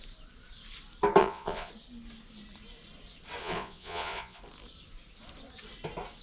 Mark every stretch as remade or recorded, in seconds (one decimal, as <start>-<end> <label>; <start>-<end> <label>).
0.0-1.2 recorded; 1.2-1.7 remade; 1.7-3.4 recorded; 3.4-4.4 remade; 4.4-6.2 recorded